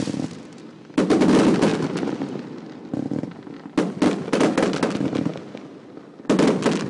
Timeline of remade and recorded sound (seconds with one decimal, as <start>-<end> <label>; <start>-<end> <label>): 0.0-6.9 recorded